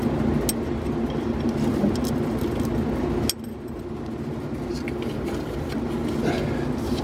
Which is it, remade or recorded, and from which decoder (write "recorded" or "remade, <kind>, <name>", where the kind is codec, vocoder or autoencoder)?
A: recorded